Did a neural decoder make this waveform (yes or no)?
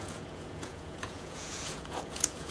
yes